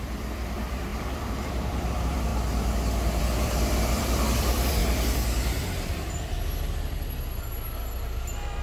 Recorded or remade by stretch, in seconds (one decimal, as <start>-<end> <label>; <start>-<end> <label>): 0.0-2.3 remade; 2.3-3.2 recorded; 3.2-8.6 remade